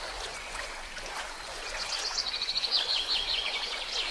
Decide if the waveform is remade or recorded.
remade